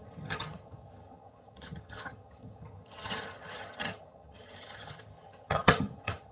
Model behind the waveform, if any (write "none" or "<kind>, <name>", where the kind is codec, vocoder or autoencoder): vocoder, HiFi-GAN